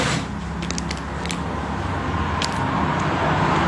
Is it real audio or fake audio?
real